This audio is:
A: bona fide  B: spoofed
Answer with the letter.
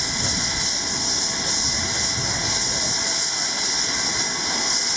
A